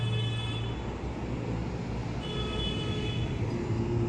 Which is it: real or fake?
real